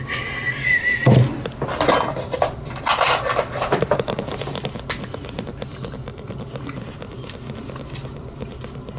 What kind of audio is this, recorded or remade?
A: recorded